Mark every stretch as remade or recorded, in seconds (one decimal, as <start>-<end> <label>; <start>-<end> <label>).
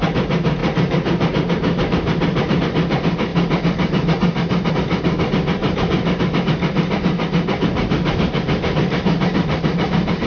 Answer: 0.0-0.6 recorded; 0.6-2.6 remade; 2.6-5.6 recorded; 5.6-6.2 remade; 6.2-10.3 recorded